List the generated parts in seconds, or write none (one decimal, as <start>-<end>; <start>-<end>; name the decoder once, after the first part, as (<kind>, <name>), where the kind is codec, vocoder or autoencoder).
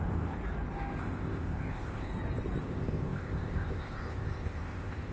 0.0-0.4 (codec, ZipCodec); 1.0-2.1; 2.6-5.1